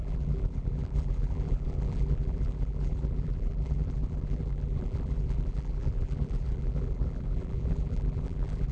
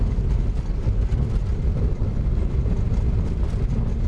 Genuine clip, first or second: second